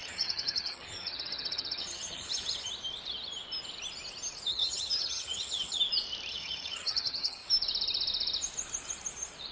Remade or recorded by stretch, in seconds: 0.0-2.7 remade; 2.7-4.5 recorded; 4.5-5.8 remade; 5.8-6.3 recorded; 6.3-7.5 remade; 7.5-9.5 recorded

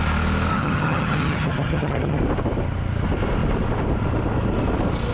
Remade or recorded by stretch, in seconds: 0.0-0.5 recorded; 0.5-2.2 remade; 2.2-5.1 recorded

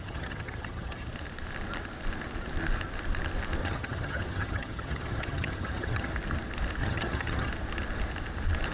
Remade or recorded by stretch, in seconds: 0.0-1.1 remade; 1.1-3.6 recorded; 3.6-6.1 remade; 6.1-6.8 recorded; 6.8-7.5 remade; 7.5-8.7 recorded

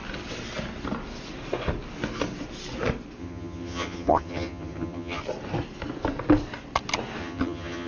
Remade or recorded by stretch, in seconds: 0.0-3.2 recorded; 3.2-5.2 remade; 5.2-7.2 recorded; 7.2-7.9 remade

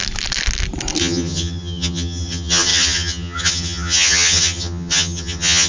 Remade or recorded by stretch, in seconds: 0.0-1.0 recorded; 1.0-5.7 remade

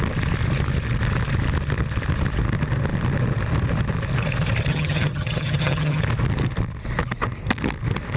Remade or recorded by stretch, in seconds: 0.0-4.7 recorded; 4.7-6.0 remade; 6.0-8.2 recorded